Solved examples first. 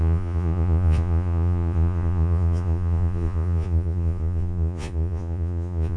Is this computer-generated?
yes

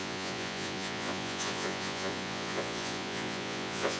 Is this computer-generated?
yes